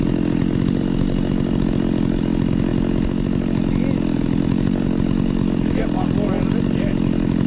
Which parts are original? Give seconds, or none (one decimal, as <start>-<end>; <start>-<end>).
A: 0.0-7.5